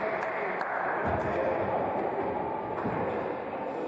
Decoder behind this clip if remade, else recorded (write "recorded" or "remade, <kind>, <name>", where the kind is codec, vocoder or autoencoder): recorded